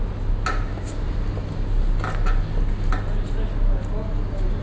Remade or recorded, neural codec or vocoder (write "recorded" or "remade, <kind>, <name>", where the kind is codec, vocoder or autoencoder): recorded